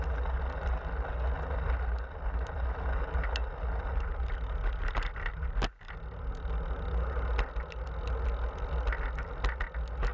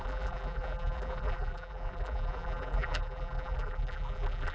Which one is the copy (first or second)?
second